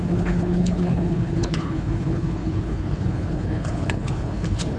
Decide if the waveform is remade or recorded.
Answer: remade